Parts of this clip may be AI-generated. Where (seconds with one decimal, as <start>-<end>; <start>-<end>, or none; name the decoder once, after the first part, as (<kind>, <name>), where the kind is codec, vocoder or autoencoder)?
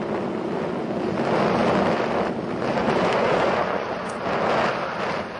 2.8-4.2 (vocoder, Vocos)